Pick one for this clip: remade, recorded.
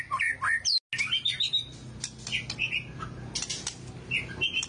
recorded